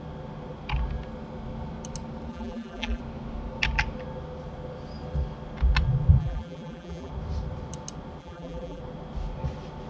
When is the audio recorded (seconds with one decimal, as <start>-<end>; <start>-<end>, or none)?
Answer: 0.0-2.3; 3.0-6.2; 7.1-8.2; 8.8-9.9

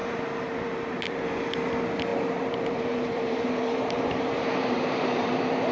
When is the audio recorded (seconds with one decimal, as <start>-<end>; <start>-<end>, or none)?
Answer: 1.3-2.1

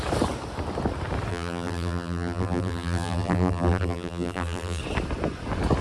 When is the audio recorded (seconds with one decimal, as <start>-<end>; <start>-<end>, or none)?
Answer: 0.0-1.3; 4.8-5.8

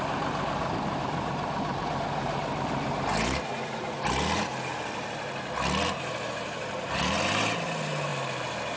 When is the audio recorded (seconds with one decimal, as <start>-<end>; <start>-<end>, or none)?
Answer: 4.5-5.9; 8.1-8.8

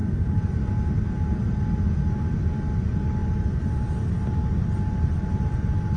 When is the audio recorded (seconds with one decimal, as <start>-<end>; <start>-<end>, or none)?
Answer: 0.6-3.2

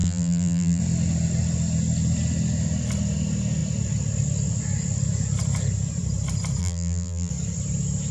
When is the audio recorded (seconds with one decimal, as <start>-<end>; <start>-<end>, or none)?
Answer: 0.8-6.6; 7.3-8.1

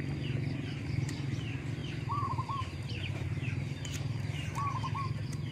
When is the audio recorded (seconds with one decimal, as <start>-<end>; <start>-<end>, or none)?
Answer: 0.0-1.8; 4.7-5.5

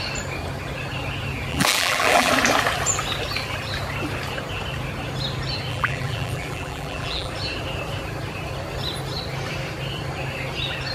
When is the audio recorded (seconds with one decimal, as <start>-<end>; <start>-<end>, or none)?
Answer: 0.0-1.5; 2.3-5.7; 7.3-10.9